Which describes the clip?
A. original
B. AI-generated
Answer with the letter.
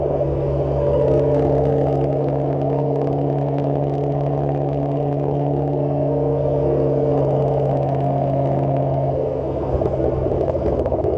B